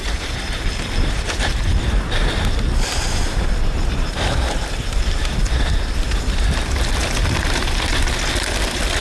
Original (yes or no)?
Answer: no